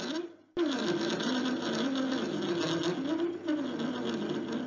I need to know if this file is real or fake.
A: real